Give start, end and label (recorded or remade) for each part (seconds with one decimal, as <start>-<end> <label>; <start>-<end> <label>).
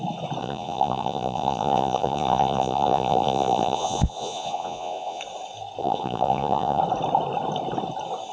0.0-0.4 recorded; 0.4-5.2 remade; 5.2-5.8 recorded; 5.8-6.8 remade; 6.8-8.3 recorded